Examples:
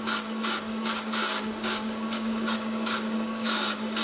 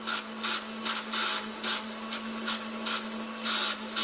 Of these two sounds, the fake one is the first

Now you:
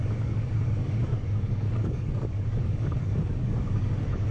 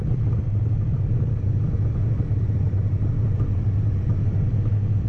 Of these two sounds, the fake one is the first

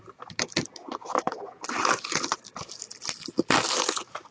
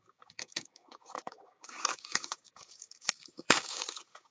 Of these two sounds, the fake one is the second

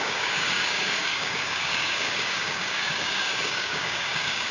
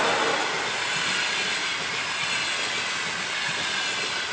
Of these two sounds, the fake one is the first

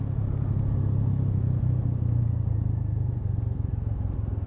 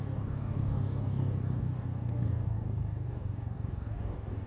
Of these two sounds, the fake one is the second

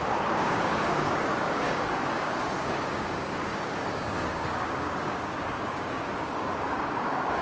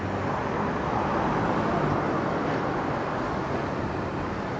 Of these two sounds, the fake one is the first